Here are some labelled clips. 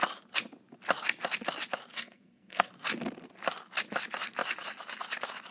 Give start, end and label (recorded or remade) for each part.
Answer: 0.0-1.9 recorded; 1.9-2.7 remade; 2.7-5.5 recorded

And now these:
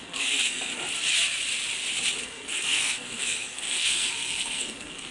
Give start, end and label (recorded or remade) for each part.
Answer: 0.0-0.7 remade; 0.7-2.2 recorded; 2.2-5.1 remade

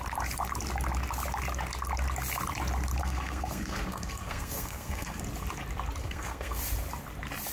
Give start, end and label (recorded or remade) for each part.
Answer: 0.0-3.0 recorded; 3.0-5.2 remade; 5.2-6.0 recorded; 6.0-6.6 remade; 6.6-7.5 recorded